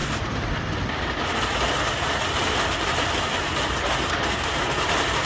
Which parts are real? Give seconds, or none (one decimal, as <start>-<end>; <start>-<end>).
0.0-5.3